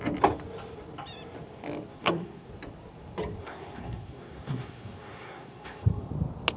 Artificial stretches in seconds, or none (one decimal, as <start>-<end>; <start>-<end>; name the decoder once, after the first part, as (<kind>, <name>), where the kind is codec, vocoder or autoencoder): 1.9-2.5 (codec, SNAC); 3.4-6.1